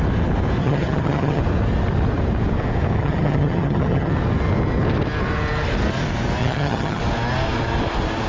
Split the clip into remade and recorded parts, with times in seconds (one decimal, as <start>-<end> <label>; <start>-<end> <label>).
0.0-0.6 recorded; 0.6-1.4 remade; 1.4-3.0 recorded; 3.0-4.1 remade; 4.1-6.4 recorded; 6.4-7.0 remade; 7.0-8.3 recorded